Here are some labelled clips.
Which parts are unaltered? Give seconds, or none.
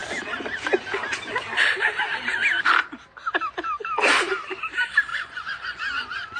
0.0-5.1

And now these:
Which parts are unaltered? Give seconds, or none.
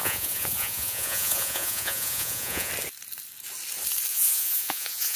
2.7-4.1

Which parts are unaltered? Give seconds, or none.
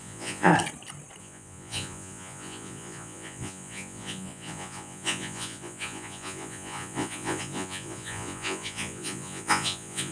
0.5-1.2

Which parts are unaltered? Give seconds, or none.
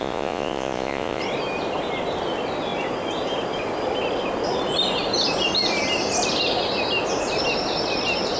1.2-8.4